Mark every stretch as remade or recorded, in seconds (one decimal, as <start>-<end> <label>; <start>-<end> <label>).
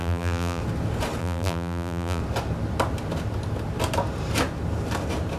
0.0-0.6 remade; 0.6-1.2 recorded; 1.2-2.2 remade; 2.2-5.4 recorded